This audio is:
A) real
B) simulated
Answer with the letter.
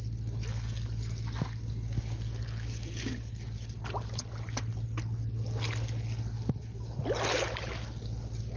A